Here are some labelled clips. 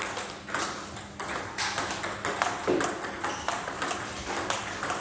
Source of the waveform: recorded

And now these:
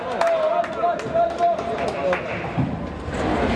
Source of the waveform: recorded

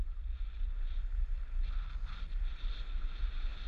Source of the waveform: recorded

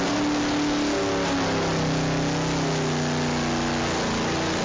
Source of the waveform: recorded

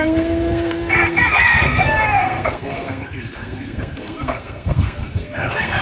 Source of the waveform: remade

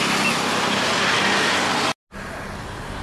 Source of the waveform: recorded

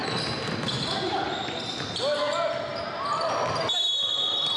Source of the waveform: recorded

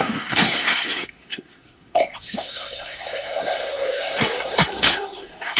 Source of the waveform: remade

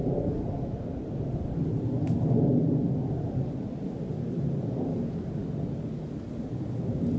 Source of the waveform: recorded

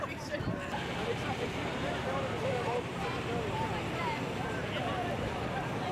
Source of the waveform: recorded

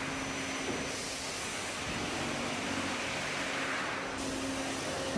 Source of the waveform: recorded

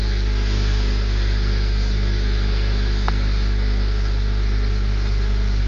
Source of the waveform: remade